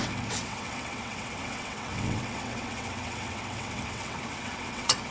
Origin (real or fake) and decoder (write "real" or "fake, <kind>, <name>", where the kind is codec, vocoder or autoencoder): fake, vocoder, WaveNeXt